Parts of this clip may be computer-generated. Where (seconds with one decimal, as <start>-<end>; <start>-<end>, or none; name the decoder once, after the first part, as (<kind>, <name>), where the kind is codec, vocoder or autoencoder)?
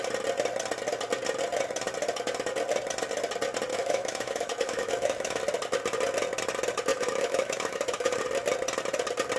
3.7-5.4 (autoencoder, DAC-VAE); 6.9-8.2